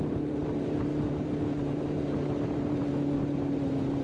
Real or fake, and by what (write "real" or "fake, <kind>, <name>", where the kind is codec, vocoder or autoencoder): fake, vocoder, BigVGAN v2